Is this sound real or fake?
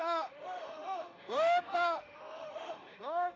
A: fake